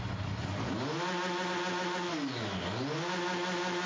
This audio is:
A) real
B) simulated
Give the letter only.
A